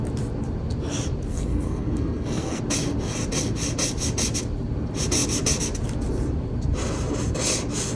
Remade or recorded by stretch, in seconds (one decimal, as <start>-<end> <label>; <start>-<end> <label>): 0.0-1.3 recorded; 1.3-2.6 remade; 2.6-8.0 recorded